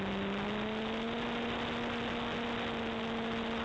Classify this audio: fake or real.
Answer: real